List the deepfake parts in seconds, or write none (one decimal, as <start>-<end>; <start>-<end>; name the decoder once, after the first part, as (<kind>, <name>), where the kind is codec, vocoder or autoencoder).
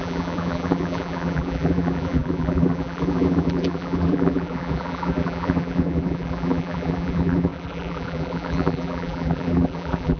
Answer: 0.0-10.2 (vocoder, BigVGAN v2)